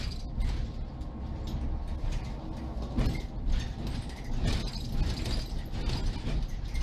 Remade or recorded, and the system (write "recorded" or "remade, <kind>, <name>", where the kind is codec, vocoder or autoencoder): recorded